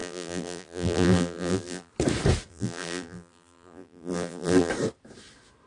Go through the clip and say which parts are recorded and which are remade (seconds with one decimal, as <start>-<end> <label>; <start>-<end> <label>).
0.0-1.9 remade; 1.9-2.5 recorded; 2.5-4.7 remade; 4.7-5.7 recorded